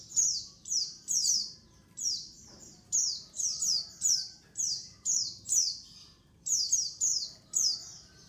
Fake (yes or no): yes